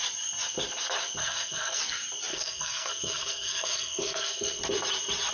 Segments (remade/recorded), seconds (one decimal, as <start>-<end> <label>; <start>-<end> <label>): 0.0-1.2 recorded; 1.2-1.8 remade; 1.8-2.3 recorded; 2.3-4.6 remade; 4.6-5.3 recorded